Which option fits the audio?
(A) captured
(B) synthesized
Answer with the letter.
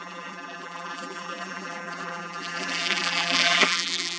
B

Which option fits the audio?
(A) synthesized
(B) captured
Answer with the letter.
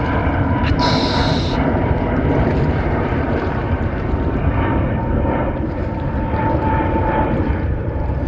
A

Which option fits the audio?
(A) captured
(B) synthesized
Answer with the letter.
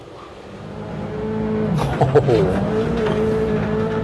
A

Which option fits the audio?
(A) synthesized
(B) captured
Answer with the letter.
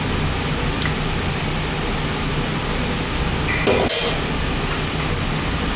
B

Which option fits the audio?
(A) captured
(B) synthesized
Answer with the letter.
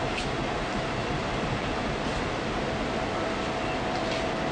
A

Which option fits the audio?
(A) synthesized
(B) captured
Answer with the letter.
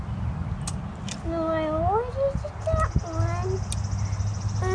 B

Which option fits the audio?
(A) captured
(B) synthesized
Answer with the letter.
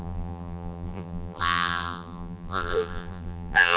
B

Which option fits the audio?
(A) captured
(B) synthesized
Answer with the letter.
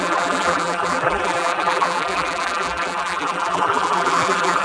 B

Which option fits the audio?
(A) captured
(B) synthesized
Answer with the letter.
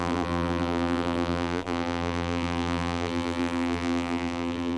B